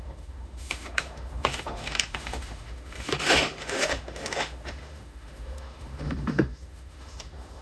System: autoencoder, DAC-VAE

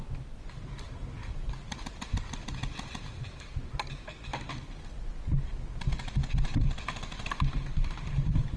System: none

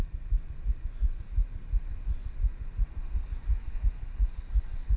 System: none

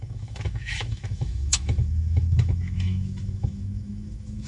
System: autoencoder, DAC-VAE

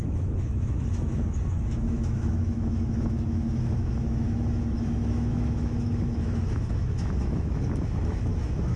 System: autoencoder, DAC-VAE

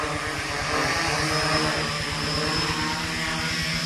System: none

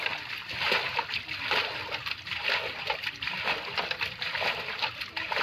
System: none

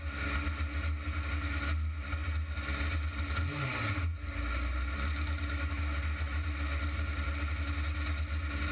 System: none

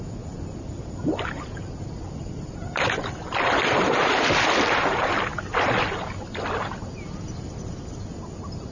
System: none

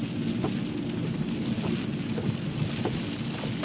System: none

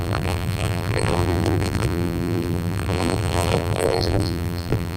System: vocoder, BigVGAN v2